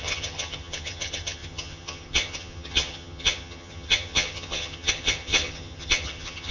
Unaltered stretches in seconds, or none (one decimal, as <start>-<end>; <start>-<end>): none